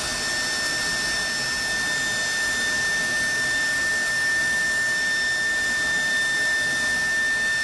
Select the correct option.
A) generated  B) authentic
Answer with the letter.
B